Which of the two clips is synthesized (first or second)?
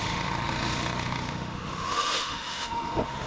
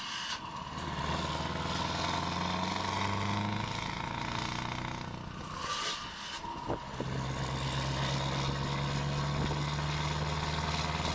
first